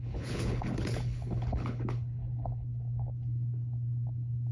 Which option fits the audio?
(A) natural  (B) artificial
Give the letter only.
B